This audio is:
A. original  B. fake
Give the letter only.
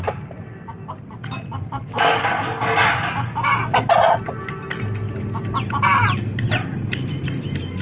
A